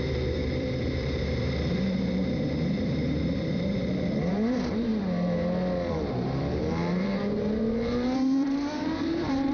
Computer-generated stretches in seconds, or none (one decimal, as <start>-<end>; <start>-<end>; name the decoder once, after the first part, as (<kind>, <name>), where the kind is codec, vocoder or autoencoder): 0.0-4.9 (vocoder, BigVGAN v2); 5.9-9.5